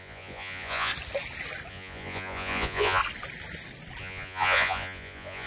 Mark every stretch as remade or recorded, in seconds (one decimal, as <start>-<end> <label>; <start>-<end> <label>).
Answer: 0.0-0.9 remade; 0.9-1.7 recorded; 1.7-3.0 remade; 3.0-4.0 recorded; 4.0-5.5 remade